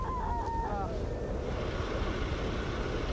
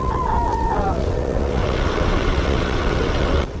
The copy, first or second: second